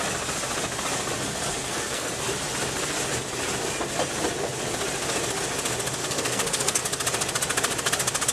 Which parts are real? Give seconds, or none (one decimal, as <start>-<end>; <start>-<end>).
0.0-1.5; 2.1-6.0; 6.8-8.3

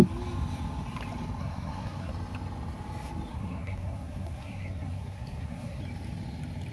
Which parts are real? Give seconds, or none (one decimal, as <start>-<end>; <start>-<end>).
0.0-1.4; 2.1-3.3; 5.8-6.7